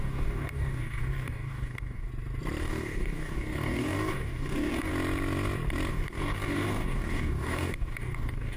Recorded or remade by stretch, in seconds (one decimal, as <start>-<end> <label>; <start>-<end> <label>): 0.0-2.1 remade; 2.1-2.6 recorded; 2.6-4.9 remade; 4.9-5.9 recorded; 5.9-8.6 remade

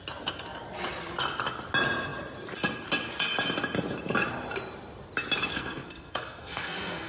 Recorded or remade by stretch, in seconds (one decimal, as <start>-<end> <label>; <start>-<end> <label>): 0.0-5.5 recorded; 5.5-7.1 remade

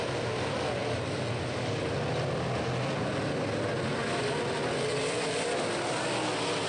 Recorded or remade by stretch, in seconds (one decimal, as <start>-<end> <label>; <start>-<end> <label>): 0.0-6.7 recorded

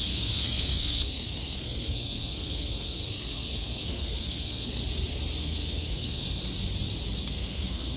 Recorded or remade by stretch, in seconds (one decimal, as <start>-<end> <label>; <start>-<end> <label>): 0.0-4.8 remade; 4.8-5.4 recorded; 5.4-6.4 remade; 6.4-7.2 recorded; 7.2-8.0 remade

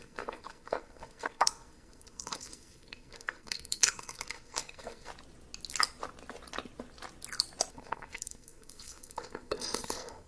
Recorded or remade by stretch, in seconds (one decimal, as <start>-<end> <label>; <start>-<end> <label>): 0.0-5.1 remade; 5.1-7.7 recorded; 7.7-10.3 remade

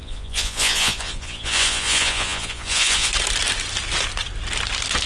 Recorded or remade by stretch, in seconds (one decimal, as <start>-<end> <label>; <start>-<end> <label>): 0.0-3.1 remade; 3.1-5.1 recorded

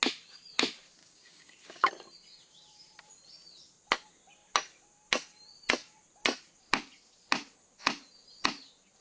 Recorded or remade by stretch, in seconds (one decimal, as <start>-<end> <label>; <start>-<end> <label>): 0.0-1.0 recorded; 1.0-1.9 remade; 1.9-9.0 recorded

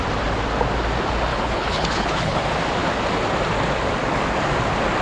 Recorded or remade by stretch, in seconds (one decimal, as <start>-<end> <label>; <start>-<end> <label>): 0.0-1.3 recorded; 1.3-2.4 remade; 2.4-5.0 recorded